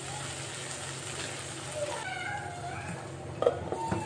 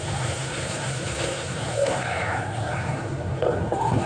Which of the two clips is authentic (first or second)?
first